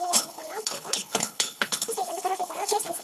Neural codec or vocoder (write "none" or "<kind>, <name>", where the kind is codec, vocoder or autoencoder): codec, HILCodec